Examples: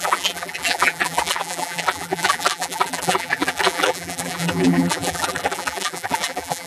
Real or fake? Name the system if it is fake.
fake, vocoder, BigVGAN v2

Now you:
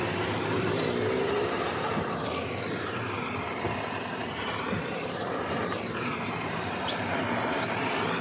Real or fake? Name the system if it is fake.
fake, vocoder, BigVGAN v2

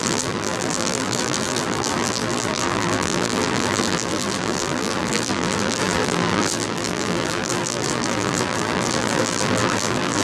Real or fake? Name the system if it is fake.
fake, vocoder, BigVGAN v2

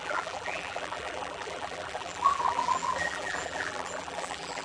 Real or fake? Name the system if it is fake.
fake, vocoder, BigVGAN v2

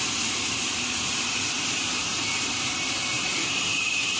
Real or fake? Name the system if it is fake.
fake, vocoder, BigVGAN v2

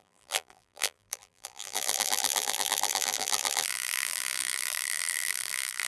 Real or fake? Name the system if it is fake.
fake, vocoder, BigVGAN v2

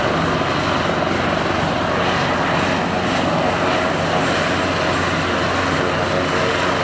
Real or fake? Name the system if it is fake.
real